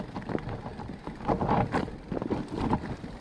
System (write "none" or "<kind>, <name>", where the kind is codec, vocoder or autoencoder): vocoder, BigVGAN v2